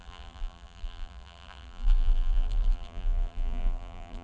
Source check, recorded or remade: remade